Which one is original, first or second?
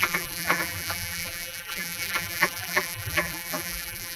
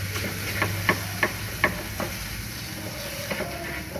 second